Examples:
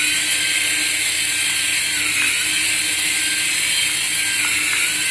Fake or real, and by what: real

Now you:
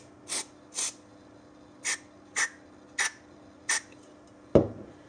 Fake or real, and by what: real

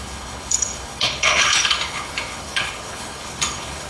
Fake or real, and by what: fake, codec, HILCodec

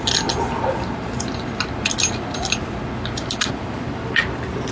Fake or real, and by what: real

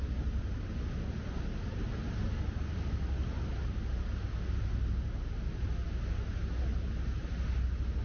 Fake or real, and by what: real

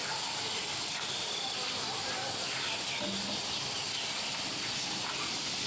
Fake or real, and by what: real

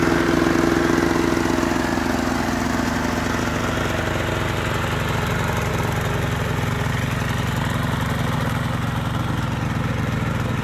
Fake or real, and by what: real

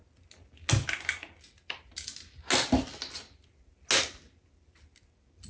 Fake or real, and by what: real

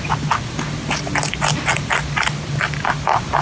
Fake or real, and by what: real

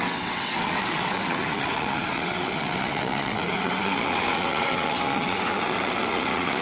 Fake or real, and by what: fake, vocoder, WaveNeXt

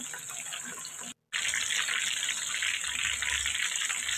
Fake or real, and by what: real